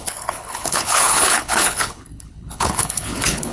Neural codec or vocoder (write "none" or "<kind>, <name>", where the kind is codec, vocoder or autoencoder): codec, HILCodec